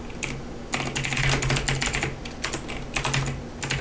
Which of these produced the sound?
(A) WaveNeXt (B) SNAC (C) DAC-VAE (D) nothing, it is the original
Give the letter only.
D